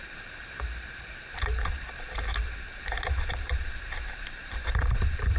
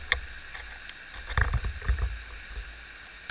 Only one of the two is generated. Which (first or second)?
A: first